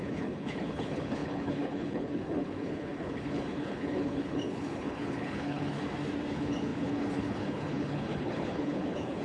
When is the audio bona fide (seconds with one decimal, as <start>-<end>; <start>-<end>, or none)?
5.8-6.3